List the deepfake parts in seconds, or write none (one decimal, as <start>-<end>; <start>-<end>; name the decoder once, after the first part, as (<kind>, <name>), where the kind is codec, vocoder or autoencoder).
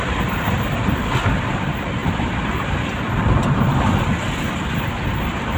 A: none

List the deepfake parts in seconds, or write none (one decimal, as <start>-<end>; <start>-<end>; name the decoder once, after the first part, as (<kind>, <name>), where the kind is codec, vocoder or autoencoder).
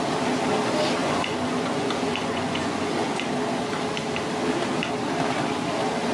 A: 1.0-3.1 (vocoder, Vocos)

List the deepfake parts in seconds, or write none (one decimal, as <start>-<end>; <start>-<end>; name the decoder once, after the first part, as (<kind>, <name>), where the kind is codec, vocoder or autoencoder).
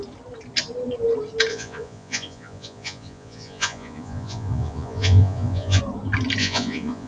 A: 1.5-5.8 (vocoder, Vocos); 6.4-7.1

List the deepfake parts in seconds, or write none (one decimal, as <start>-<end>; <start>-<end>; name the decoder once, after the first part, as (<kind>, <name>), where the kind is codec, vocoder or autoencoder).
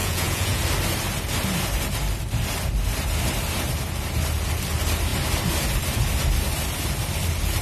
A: 0.0-0.6 (vocoder, Vocos)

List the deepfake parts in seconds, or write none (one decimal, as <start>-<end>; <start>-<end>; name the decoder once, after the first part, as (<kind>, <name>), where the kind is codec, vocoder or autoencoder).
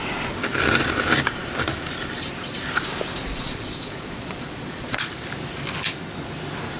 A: 3.3-5.1 (vocoder, Vocos)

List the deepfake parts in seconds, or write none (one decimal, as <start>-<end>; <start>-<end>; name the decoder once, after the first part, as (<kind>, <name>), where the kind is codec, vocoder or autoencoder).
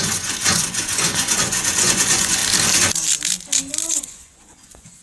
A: 0.0-2.4 (vocoder, Vocos); 3.9-5.0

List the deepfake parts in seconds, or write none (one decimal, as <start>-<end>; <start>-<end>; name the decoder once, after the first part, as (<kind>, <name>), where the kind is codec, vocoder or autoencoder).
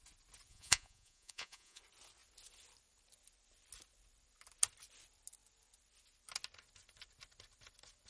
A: 0.5-1.8 (vocoder, Vocos)